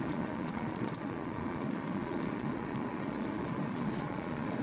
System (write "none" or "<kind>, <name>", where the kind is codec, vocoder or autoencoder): vocoder, Vocos